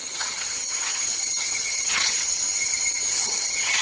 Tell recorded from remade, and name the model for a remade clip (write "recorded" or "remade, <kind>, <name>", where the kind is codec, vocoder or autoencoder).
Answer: remade, vocoder, HiFi-GAN